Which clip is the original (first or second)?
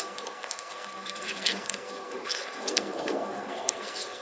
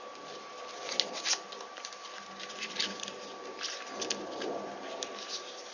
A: second